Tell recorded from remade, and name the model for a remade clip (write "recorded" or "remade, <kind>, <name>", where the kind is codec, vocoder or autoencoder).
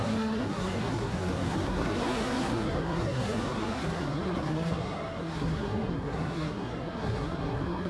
remade, codec, SNAC